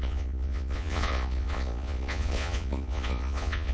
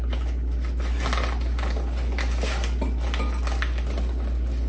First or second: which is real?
second